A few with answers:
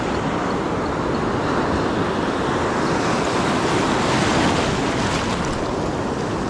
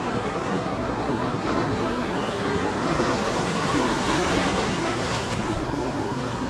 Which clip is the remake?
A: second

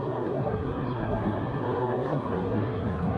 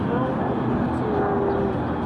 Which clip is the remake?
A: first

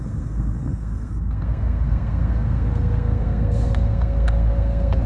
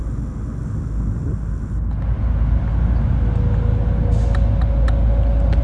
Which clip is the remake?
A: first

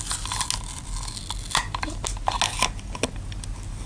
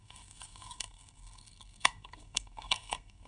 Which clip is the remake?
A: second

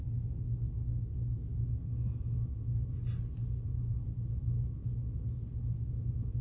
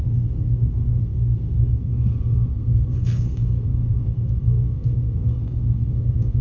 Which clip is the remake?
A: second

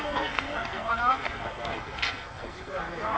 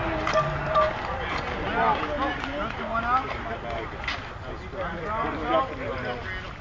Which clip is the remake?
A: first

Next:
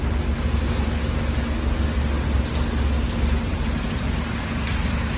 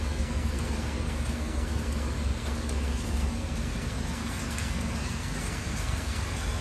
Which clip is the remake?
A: second